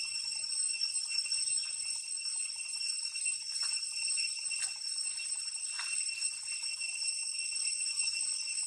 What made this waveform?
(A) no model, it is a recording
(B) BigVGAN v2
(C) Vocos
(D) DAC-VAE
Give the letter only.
A